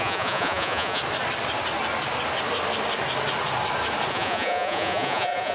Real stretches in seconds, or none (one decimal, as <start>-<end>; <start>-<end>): 1.0-4.1